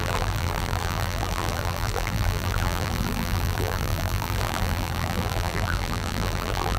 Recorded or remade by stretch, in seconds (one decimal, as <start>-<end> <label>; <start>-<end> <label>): 0.0-6.8 remade